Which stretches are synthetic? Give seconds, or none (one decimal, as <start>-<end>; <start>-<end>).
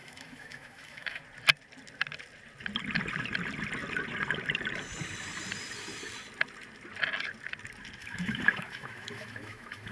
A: 0.0-1.2; 8.0-9.9